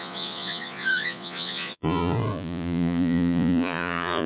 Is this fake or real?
fake